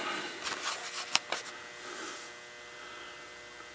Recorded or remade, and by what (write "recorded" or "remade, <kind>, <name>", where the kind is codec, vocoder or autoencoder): recorded